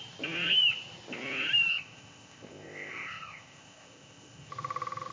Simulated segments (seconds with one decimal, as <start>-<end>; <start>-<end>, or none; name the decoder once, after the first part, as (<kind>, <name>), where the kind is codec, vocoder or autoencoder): 1.7-4.5 (codec, ZipCodec)